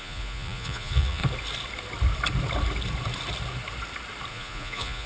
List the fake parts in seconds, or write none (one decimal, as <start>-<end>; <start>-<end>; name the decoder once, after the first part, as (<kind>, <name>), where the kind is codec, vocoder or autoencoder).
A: 0.0-1.2 (vocoder, Vocos); 4.3-5.1